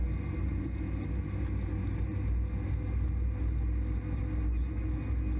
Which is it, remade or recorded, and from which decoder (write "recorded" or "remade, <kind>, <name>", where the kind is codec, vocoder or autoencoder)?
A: recorded